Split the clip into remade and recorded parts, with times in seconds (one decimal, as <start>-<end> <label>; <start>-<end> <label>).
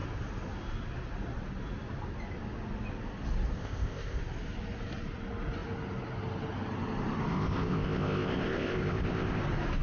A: 0.0-3.6 recorded; 3.6-4.2 remade; 4.2-7.3 recorded; 7.3-9.4 remade; 9.4-9.8 recorded